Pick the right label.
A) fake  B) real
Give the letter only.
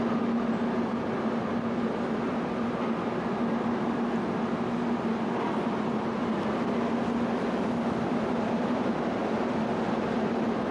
B